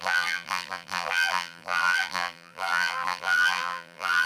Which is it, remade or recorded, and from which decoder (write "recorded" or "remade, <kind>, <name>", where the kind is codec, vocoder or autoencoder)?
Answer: remade, vocoder, BigVGAN v2